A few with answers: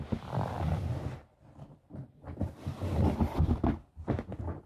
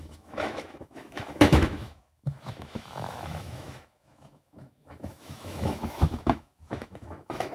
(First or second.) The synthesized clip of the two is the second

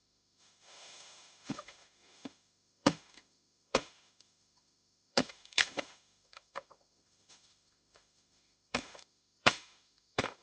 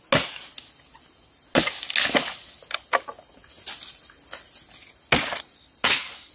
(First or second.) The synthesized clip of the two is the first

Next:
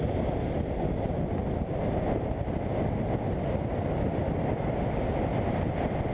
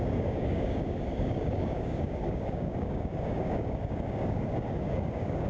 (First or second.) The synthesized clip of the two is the second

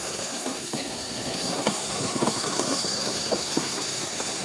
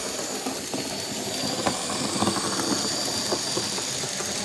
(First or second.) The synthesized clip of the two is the first